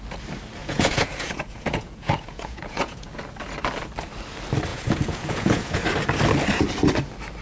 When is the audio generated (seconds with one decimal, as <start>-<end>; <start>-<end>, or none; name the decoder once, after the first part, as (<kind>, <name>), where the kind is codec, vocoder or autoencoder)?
0.6-3.1 (vocoder, Vocos); 4.7-5.8